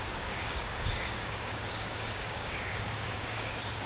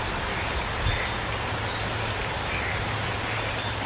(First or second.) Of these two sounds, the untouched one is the second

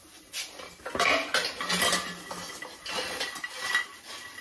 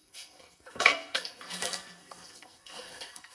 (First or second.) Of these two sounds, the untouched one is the first